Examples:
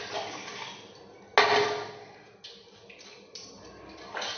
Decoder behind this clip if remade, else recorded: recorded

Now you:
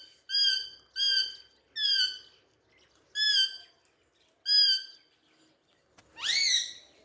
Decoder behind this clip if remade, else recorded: recorded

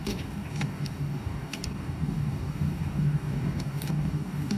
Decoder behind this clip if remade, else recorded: remade, codec, DAC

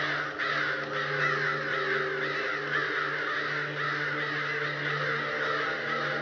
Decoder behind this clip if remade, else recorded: recorded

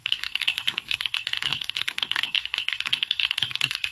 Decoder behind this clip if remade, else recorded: remade, codec, SNAC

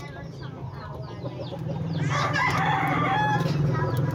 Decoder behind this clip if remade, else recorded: recorded